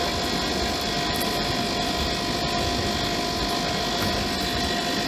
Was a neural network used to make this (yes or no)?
no